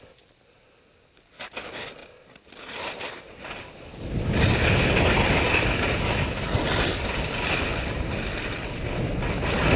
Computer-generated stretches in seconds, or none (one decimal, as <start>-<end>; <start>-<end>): none